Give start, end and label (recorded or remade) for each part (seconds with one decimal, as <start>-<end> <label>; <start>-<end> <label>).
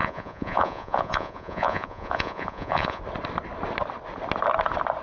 0.0-3.0 remade; 3.0-5.0 recorded